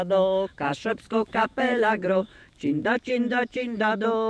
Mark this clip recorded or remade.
remade